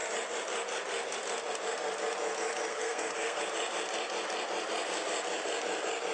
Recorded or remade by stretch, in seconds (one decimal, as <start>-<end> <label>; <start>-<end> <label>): 0.0-2.7 recorded; 2.7-3.4 remade; 3.4-6.1 recorded